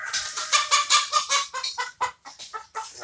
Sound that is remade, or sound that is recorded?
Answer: recorded